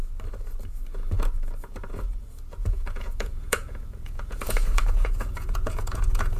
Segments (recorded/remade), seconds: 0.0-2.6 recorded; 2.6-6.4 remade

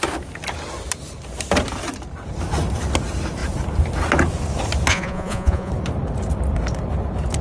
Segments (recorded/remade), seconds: 0.0-4.9 recorded; 4.9-5.7 remade; 5.7-7.4 recorded

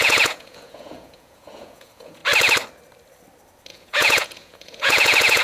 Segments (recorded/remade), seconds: 0.0-2.2 remade; 2.2-3.7 recorded; 3.7-5.4 remade

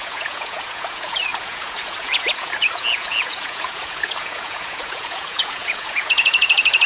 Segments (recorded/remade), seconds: 0.0-6.9 remade

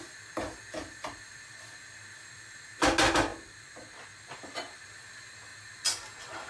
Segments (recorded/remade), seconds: 0.0-6.5 recorded